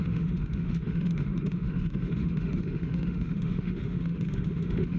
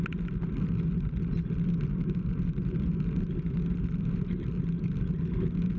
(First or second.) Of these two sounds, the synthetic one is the first